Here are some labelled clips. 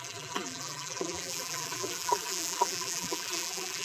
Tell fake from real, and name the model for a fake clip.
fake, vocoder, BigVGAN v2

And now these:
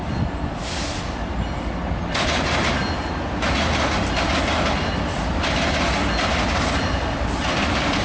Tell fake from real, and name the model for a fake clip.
real